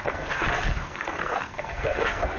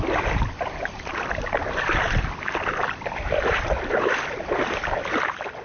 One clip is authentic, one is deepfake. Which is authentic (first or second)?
second